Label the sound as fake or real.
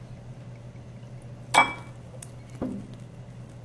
real